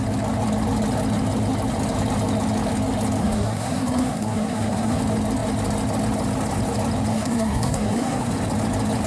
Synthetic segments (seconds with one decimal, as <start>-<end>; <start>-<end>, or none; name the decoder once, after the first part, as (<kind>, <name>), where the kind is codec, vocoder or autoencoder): 3.2-5.0 (codec, SNAC); 7.1-8.3